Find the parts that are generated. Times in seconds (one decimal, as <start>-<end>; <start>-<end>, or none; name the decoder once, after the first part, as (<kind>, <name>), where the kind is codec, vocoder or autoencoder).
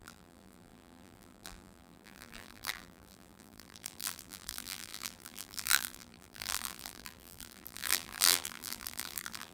0.0-9.5 (vocoder, BigVGAN v2)